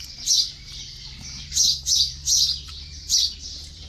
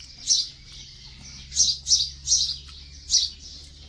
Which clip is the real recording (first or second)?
second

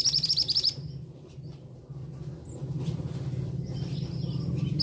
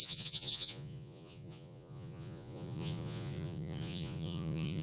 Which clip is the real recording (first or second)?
first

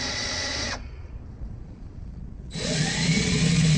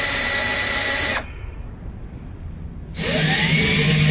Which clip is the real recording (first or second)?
second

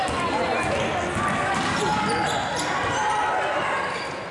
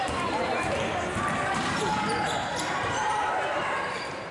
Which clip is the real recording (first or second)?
first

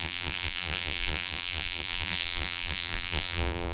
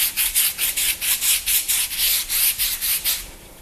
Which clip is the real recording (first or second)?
second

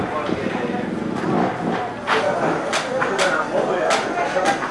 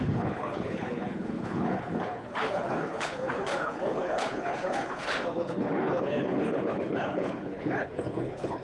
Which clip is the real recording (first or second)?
first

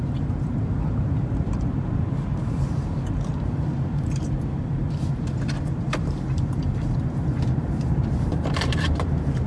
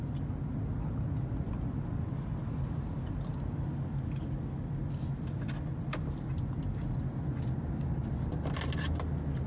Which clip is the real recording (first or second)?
second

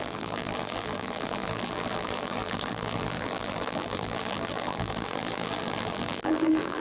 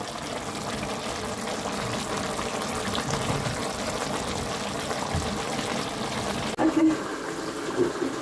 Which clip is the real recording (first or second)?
second